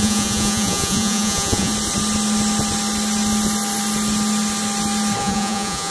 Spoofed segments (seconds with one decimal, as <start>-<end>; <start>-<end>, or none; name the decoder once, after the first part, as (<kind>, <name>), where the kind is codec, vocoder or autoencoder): 0.0-1.7 (vocoder, Vocos); 5.2-5.9